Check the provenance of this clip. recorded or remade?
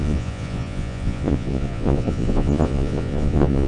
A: remade